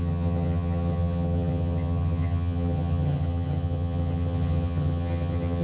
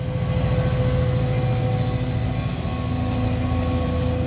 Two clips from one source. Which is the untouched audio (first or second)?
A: second